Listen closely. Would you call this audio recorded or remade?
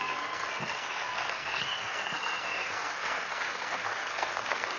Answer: remade